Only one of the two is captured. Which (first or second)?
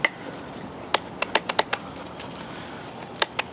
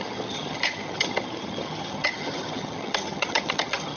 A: first